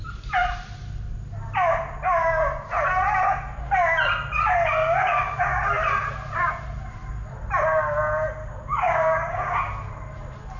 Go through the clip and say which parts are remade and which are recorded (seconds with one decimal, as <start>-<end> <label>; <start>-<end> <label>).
0.0-4.8 recorded; 4.8-5.6 remade; 5.6-8.4 recorded; 8.4-9.6 remade; 9.6-10.6 recorded

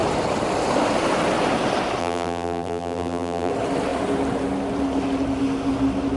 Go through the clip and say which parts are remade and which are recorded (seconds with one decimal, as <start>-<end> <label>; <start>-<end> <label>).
0.0-2.0 recorded; 2.0-3.5 remade; 3.5-6.2 recorded

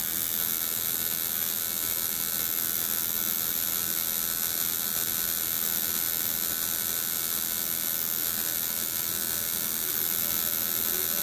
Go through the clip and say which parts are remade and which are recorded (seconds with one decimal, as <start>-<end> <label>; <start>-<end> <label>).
0.0-11.2 recorded